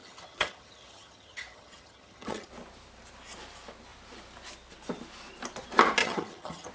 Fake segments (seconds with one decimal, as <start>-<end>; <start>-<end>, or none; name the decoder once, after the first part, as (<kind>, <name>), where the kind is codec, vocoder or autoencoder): 0.0-2.5 (vocoder, HiFi-GAN); 6.0-6.7